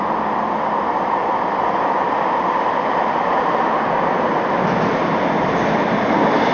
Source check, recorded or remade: recorded